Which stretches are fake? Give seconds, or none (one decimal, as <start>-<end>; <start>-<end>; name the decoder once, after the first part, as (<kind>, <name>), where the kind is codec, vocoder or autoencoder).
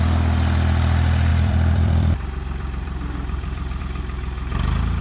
1.3-3.8 (vocoder, BigVGAN v2)